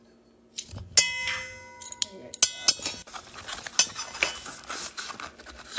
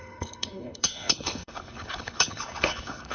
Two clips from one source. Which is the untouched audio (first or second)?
first